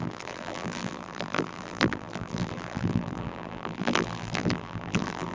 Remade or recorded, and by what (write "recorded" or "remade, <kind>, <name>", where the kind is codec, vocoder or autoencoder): remade, vocoder, BigVGAN v2